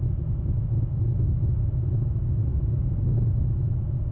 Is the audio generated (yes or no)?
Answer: no